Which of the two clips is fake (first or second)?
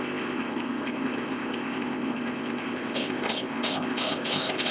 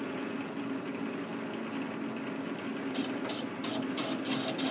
first